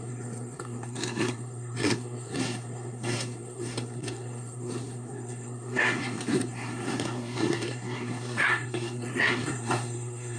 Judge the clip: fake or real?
fake